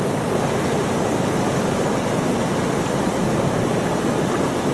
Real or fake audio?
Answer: real